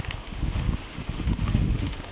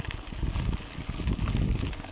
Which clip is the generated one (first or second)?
first